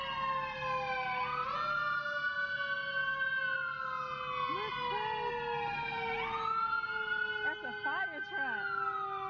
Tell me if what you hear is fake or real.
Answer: real